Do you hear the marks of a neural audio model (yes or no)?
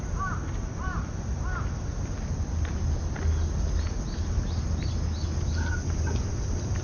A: no